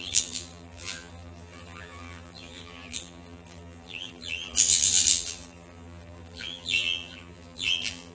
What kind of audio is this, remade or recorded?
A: remade